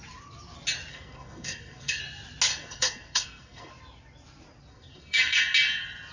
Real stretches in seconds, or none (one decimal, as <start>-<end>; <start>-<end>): 0.0-0.9; 2.0-2.5; 3.7-4.7; 5.4-6.1